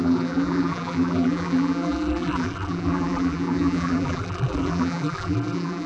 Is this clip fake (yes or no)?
yes